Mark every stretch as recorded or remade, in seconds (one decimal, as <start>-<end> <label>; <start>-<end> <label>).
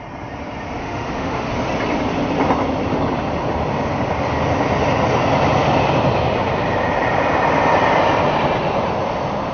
0.0-0.8 recorded; 0.8-1.5 remade; 1.5-9.5 recorded